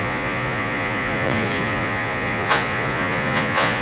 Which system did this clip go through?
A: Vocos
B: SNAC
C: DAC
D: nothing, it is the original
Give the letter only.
A